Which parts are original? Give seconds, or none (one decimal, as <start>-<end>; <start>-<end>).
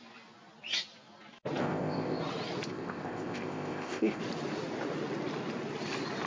0.0-1.6; 2.2-2.7; 4.2-6.3